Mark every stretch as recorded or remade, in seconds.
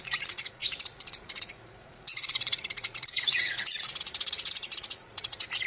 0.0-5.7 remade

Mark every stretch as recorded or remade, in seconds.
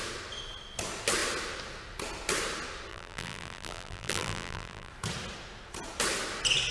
0.0-2.9 recorded; 2.9-4.9 remade; 4.9-6.7 recorded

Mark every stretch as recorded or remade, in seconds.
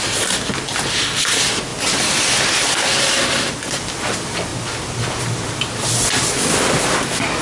0.0-1.7 recorded; 1.7-2.4 remade; 2.4-4.5 recorded; 4.5-5.2 remade; 5.2-7.4 recorded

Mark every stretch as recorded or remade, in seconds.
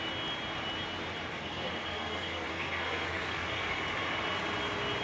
0.0-1.3 recorded; 1.3-3.8 remade; 3.8-5.0 recorded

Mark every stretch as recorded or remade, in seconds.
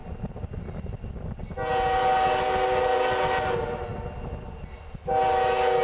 0.0-5.8 recorded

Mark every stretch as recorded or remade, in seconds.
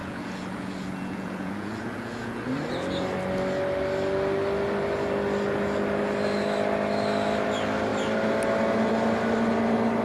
0.0-2.4 remade; 2.4-10.0 recorded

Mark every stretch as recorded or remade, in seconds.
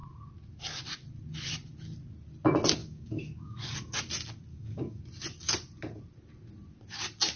0.0-2.8 recorded; 2.8-4.0 remade; 4.0-4.5 recorded; 4.5-5.0 remade; 5.0-7.4 recorded